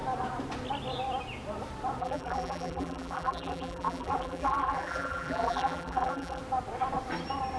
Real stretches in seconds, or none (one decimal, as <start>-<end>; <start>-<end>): 0.0-2.0; 6.4-7.6